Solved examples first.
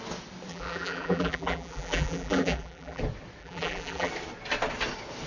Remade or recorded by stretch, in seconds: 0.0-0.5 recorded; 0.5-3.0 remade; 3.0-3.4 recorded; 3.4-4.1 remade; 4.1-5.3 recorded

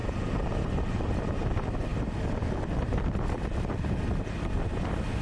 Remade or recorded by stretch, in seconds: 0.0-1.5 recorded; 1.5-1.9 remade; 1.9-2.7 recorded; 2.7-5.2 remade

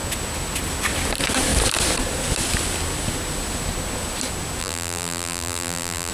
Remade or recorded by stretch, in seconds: 0.0-4.6 recorded; 4.6-6.1 remade

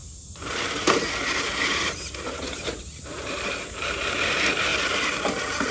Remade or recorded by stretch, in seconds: 0.0-5.7 remade